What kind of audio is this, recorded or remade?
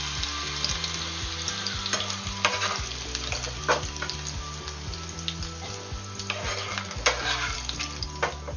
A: recorded